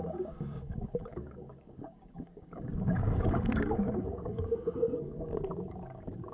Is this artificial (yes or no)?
yes